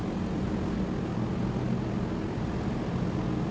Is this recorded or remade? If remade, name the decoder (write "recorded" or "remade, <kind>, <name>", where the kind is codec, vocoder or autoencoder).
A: recorded